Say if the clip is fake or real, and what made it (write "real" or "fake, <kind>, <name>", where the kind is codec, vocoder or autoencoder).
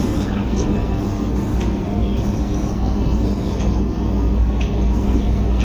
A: fake, codec, SNAC